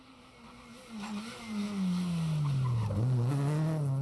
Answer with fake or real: real